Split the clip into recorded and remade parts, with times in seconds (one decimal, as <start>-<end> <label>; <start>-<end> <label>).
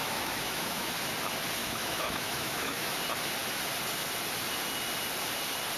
0.0-0.9 remade; 0.9-1.6 recorded; 1.6-3.0 remade; 3.0-5.8 recorded